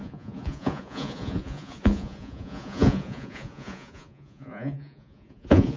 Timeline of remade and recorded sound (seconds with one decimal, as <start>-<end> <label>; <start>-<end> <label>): 0.0-5.8 remade